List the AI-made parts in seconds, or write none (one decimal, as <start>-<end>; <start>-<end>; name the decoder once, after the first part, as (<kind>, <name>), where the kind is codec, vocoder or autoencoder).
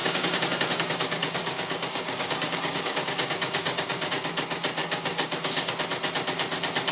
0.0-4.1 (codec, DAC); 4.8-5.7